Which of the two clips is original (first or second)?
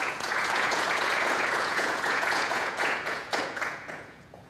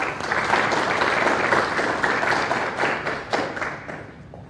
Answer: second